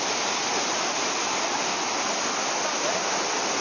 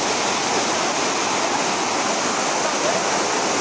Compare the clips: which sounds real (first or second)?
second